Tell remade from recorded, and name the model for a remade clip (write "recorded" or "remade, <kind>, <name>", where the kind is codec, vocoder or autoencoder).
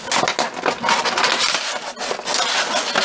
recorded